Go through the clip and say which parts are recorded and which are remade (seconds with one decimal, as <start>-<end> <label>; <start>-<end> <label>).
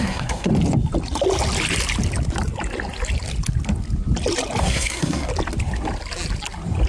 0.0-0.5 remade; 0.5-4.6 recorded; 4.6-5.3 remade; 5.3-6.9 recorded